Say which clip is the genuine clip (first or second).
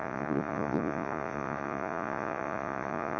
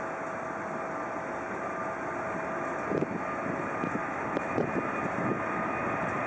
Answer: second